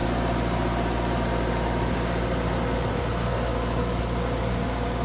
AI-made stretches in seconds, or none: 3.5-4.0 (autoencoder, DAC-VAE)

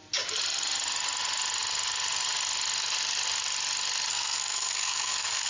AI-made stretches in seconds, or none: 4.1-5.5 (codec, SNAC)

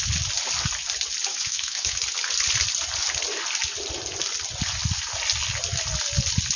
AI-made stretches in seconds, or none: 1.3-2.0 (autoencoder, DAC-VAE)

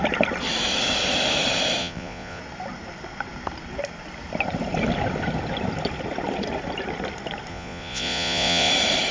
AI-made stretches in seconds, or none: 1.8-2.4 (vocoder, Vocos); 7.5-8.7

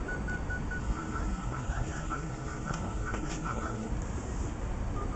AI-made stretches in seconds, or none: 0.8-3.9 (codec, SNAC)